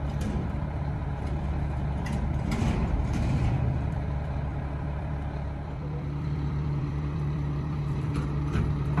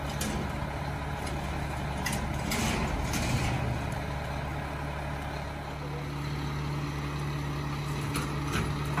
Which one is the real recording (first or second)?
second